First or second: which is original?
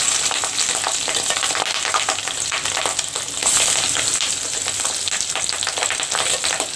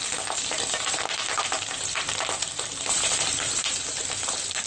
first